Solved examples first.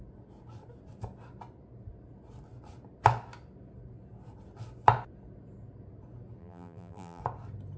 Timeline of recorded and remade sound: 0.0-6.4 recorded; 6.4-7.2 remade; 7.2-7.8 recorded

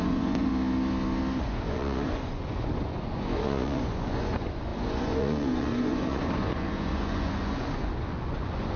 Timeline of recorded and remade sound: 0.0-0.5 remade; 0.5-1.4 recorded; 1.4-8.8 remade